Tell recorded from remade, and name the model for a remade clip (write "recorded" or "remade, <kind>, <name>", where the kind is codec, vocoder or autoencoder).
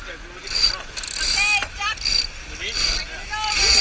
recorded